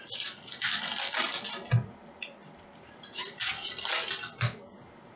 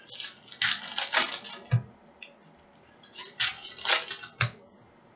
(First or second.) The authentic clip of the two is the second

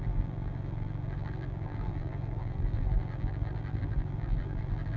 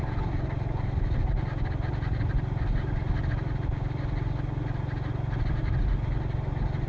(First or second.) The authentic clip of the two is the second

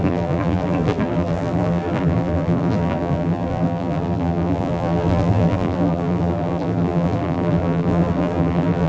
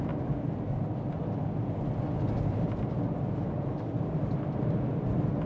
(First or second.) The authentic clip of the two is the second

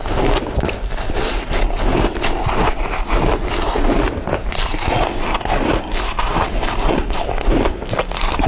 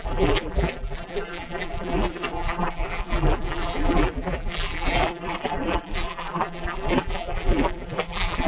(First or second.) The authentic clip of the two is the first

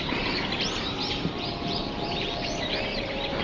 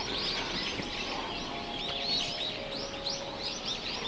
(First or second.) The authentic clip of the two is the second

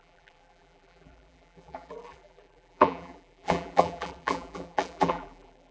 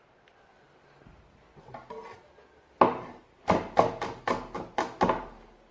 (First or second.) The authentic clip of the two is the second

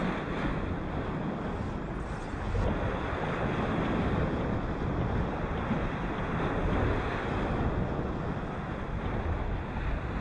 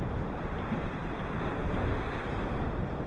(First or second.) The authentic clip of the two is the first